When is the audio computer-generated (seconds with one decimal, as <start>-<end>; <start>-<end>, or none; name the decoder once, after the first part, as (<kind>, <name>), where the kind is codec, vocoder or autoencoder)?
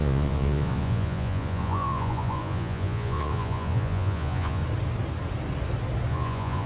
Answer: 0.0-4.6 (vocoder, Vocos); 6.1-6.7